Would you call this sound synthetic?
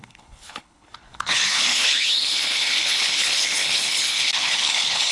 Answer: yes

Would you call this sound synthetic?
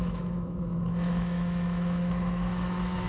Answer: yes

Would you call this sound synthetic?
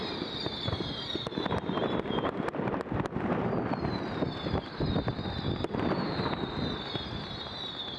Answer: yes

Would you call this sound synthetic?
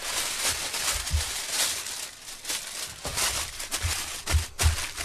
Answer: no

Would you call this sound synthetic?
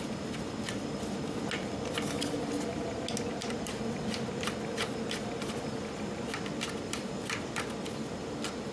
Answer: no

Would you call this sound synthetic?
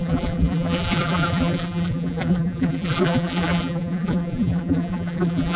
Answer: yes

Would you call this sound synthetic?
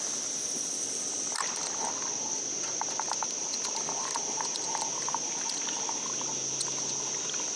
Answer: no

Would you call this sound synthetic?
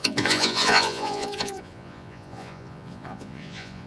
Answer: yes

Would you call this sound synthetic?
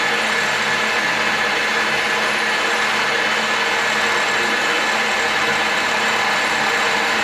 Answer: no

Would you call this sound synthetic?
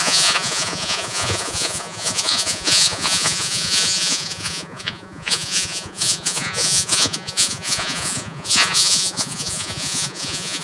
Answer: yes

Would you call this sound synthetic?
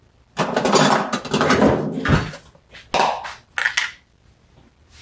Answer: no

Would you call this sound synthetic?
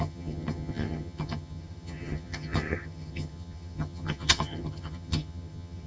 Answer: yes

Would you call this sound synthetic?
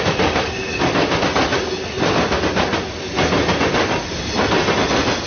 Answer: no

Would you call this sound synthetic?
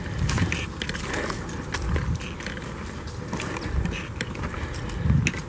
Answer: no